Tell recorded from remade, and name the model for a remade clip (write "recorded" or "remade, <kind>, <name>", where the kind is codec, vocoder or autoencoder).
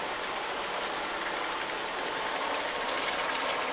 recorded